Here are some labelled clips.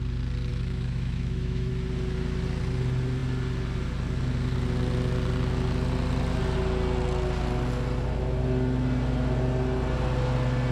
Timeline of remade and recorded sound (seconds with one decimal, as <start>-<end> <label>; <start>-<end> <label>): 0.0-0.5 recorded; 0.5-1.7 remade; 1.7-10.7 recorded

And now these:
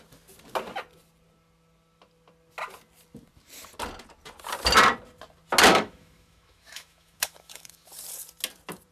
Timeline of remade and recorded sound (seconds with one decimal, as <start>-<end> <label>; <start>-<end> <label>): 0.0-5.7 recorded; 5.7-7.9 remade; 7.9-8.9 recorded

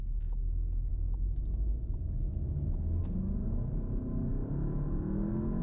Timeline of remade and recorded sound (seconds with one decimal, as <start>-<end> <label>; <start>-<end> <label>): 0.0-0.9 recorded; 0.9-3.0 remade; 3.0-5.6 recorded

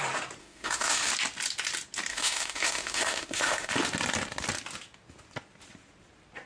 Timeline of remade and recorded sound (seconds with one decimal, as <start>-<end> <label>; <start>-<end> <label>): 0.0-0.4 recorded; 0.4-1.1 remade; 1.1-2.1 recorded; 2.1-3.7 remade; 3.7-6.5 recorded